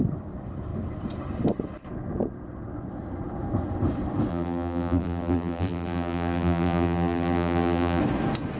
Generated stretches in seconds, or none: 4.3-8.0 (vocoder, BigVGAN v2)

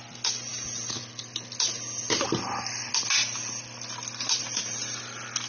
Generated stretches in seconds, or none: none

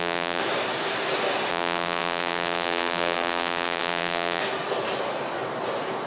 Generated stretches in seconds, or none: 0.0-0.4 (vocoder, BigVGAN v2); 1.5-4.4